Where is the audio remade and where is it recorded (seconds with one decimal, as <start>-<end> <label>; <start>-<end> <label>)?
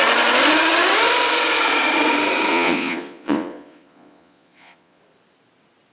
0.0-2.5 recorded; 2.5-5.0 remade; 5.0-5.9 recorded